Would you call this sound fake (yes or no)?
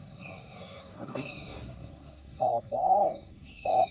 yes